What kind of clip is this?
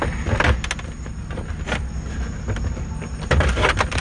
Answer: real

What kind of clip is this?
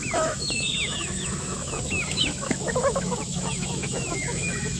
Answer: fake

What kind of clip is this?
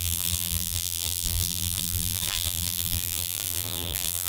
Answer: fake